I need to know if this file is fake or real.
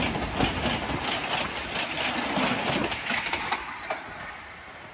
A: real